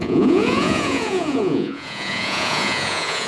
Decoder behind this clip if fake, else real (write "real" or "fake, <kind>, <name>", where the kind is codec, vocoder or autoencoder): fake, vocoder, Vocos